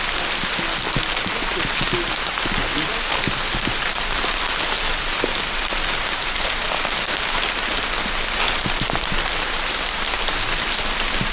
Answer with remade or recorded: recorded